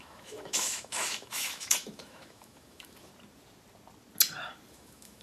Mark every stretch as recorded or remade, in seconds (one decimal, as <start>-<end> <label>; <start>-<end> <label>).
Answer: 0.0-3.1 remade; 3.1-4.7 recorded; 4.7-5.2 remade